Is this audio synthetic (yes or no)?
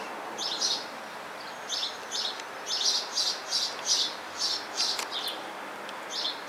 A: no